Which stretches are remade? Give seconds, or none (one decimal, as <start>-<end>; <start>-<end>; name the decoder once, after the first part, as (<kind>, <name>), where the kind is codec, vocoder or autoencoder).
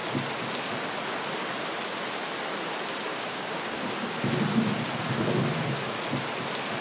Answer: 3.1-3.8 (codec, DAC)